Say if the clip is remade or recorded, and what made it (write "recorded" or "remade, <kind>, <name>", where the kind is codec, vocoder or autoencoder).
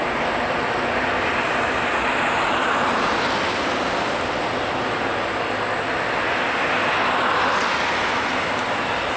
recorded